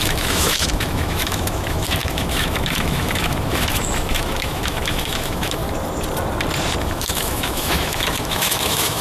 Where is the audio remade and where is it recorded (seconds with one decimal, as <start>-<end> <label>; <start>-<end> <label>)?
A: 0.0-5.6 remade; 5.6-6.8 recorded; 6.8-9.0 remade